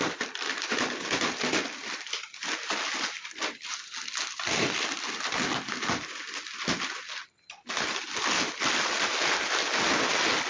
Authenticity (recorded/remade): recorded